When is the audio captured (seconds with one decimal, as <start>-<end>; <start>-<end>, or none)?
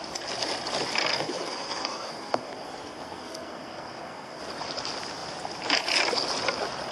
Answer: 0.0-1.1; 4.4-6.9